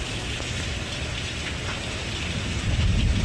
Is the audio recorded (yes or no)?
yes